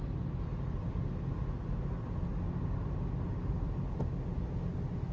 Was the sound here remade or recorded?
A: recorded